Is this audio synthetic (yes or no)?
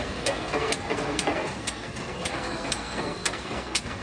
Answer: yes